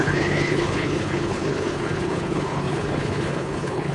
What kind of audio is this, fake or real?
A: fake